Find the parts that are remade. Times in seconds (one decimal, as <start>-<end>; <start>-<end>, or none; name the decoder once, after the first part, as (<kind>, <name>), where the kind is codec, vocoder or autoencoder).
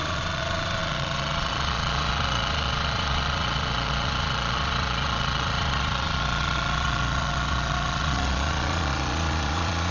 0.0-9.9 (vocoder, Vocos)